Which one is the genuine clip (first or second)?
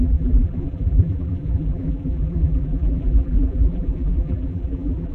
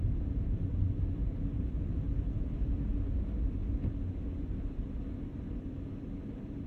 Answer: second